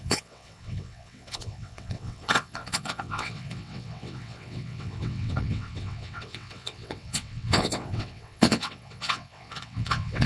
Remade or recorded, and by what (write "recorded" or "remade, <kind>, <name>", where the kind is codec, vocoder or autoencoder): remade, vocoder, WaveNeXt